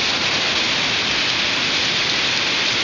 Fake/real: real